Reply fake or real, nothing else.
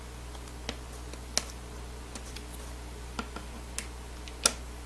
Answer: real